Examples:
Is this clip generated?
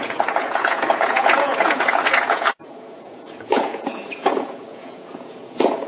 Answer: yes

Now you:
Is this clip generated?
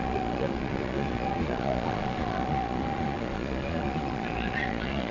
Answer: yes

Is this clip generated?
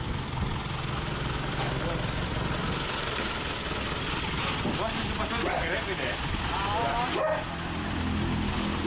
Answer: no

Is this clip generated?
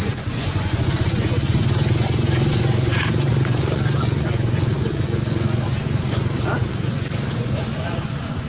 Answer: yes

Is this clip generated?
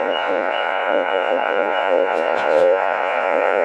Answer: yes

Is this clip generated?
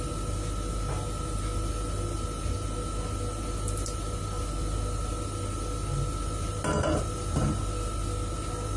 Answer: no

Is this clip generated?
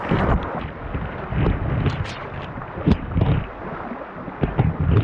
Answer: no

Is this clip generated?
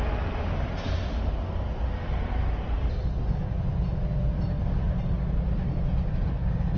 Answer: no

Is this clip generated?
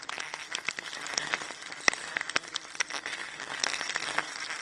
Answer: no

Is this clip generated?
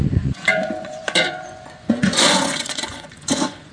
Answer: yes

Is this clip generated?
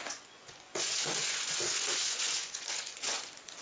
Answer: yes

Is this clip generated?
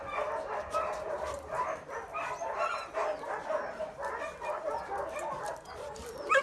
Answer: no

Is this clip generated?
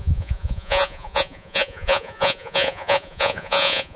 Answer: yes